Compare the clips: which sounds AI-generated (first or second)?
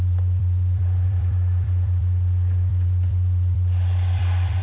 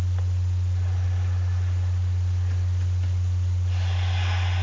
first